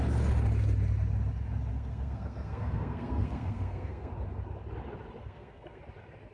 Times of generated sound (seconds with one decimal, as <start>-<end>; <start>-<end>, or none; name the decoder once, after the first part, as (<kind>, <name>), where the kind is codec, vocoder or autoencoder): 1.7-4.1 (codec, SNAC); 5.2-5.8